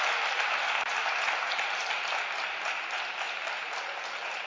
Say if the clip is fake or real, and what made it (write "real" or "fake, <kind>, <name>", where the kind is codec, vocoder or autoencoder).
real